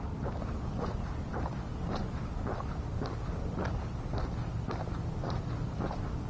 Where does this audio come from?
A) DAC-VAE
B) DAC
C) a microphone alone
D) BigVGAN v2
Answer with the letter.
C